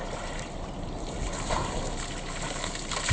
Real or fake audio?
real